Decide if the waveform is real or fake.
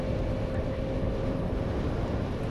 real